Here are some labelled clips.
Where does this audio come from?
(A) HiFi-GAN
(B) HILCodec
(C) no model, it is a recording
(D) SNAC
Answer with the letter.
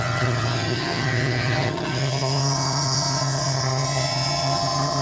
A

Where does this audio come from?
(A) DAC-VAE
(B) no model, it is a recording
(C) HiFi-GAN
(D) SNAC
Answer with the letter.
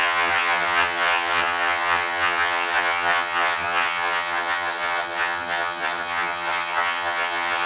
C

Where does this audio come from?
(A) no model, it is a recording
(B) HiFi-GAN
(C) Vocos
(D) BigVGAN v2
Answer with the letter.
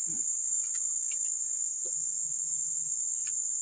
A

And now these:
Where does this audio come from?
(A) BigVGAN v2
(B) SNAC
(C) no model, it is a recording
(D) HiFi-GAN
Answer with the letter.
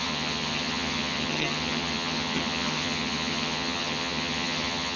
D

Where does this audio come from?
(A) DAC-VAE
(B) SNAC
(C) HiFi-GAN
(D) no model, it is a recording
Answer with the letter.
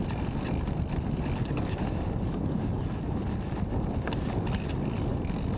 D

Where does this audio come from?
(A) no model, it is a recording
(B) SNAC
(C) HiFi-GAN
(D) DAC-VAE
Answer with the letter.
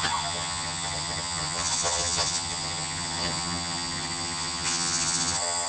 C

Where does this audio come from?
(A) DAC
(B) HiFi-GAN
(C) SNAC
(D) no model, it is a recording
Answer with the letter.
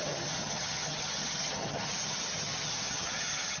B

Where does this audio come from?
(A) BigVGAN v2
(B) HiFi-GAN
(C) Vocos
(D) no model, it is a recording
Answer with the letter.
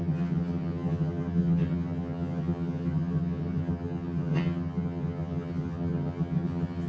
B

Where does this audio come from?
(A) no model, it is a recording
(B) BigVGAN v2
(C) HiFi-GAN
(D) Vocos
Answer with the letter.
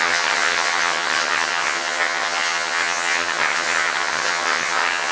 C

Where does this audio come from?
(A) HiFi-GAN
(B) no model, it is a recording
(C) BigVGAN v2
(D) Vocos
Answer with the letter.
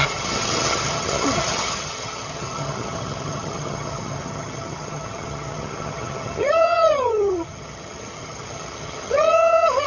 A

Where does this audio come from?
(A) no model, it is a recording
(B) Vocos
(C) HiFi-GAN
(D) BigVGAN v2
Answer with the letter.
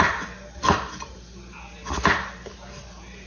A